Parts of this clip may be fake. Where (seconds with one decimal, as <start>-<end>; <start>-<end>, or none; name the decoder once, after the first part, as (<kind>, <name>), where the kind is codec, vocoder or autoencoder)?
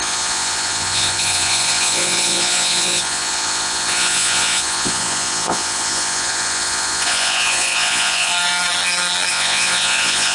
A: 0.0-8.3 (vocoder, Vocos); 9.3-10.3